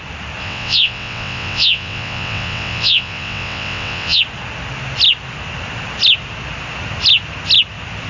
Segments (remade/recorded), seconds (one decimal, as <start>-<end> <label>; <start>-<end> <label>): 0.0-0.4 recorded; 0.4-4.2 remade; 4.2-8.1 recorded

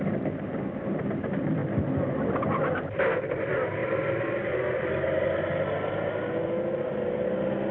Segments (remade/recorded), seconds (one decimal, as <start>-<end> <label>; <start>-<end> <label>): 0.0-7.7 recorded

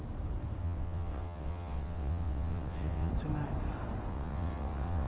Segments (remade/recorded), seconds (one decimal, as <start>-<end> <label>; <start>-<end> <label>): 0.0-0.6 recorded; 0.6-3.1 remade; 3.1-4.1 recorded; 4.1-5.1 remade

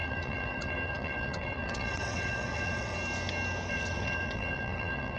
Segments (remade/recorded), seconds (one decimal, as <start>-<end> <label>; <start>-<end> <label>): 0.0-2.9 remade; 2.9-3.7 recorded; 3.7-5.2 remade